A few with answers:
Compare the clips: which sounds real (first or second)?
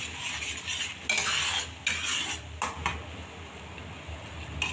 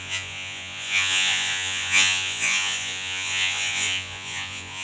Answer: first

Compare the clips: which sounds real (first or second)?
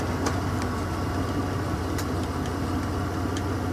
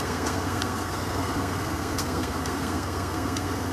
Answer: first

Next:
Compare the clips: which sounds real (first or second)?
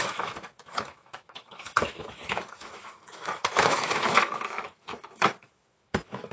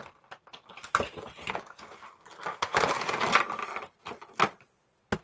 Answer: second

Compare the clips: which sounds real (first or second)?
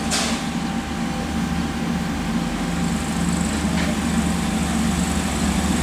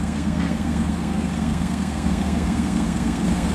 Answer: first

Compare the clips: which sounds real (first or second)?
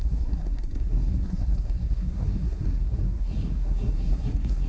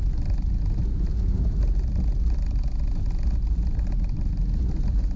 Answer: second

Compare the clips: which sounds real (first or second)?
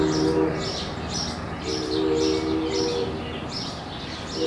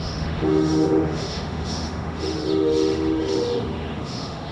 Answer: first